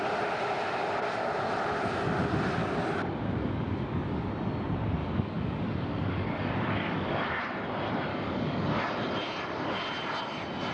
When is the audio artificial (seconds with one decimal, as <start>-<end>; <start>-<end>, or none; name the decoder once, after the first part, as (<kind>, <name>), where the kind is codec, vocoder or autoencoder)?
2.6-4.3 (codec, DAC); 5.0-7.4; 8.1-8.9